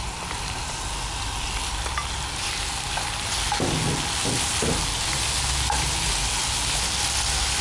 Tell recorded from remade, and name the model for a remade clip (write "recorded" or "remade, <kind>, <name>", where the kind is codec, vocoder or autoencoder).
recorded